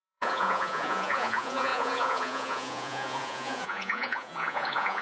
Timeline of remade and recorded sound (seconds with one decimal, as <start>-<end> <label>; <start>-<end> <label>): 0.0-5.0 remade

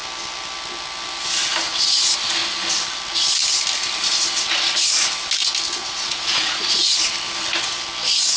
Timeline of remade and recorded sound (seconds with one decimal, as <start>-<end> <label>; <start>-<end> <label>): 0.0-5.8 recorded; 5.8-7.1 remade; 7.1-8.4 recorded

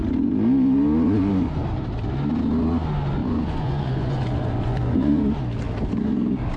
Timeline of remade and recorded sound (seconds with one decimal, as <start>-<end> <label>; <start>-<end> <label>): 0.0-3.2 recorded; 3.2-5.2 remade; 5.2-6.6 recorded

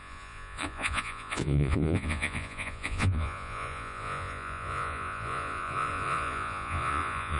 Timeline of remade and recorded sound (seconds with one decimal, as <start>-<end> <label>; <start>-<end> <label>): 0.0-7.4 remade

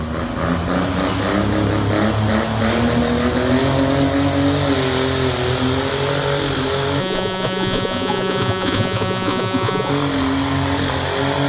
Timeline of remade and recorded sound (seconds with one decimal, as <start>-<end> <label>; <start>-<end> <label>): 0.0-7.0 recorded; 7.0-9.9 remade; 9.9-11.5 recorded

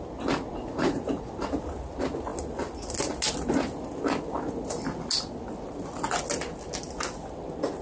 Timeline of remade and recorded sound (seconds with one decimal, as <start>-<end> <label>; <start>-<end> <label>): 0.0-0.5 recorded; 0.5-1.3 remade; 1.3-7.8 recorded

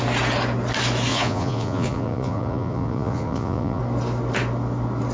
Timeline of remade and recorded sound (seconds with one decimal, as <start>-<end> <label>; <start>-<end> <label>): 0.0-1.1 recorded; 1.1-3.8 remade; 3.8-5.1 recorded

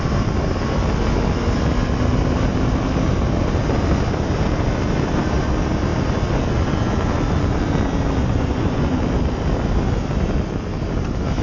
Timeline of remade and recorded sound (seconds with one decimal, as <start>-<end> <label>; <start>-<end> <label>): 0.0-8.2 recorded; 8.2-9.0 remade; 9.0-11.4 recorded